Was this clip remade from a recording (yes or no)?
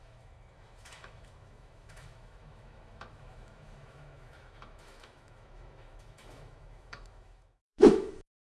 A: yes